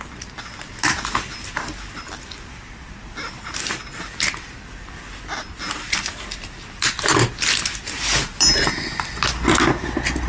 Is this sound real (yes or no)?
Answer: yes